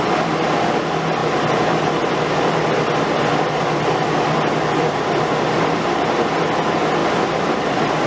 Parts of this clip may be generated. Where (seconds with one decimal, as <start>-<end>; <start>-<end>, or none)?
7.0-8.1